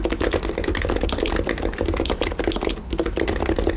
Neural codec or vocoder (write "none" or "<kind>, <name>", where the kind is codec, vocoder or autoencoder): none